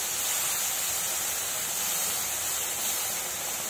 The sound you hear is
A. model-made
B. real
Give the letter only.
B